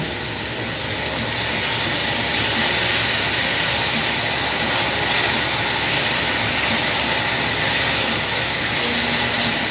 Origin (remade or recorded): recorded